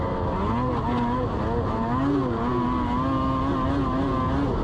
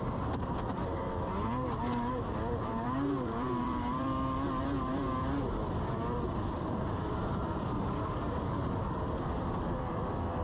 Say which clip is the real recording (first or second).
first